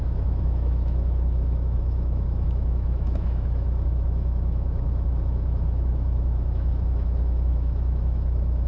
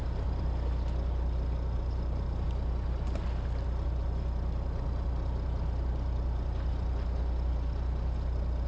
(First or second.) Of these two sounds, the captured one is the second